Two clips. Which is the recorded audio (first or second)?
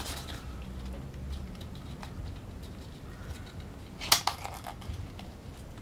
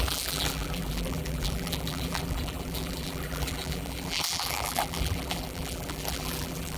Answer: first